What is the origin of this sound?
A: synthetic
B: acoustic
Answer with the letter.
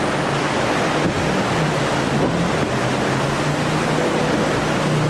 B